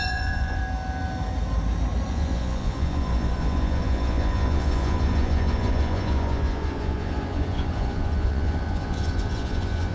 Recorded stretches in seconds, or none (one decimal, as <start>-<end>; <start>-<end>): 0.6-2.1